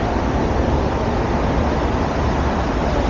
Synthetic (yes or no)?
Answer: no